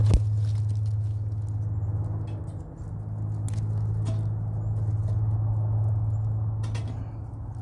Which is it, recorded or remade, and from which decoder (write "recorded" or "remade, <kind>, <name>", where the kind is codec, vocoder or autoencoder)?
recorded